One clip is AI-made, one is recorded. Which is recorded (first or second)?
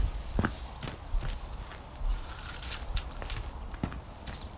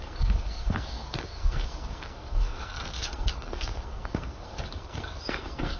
first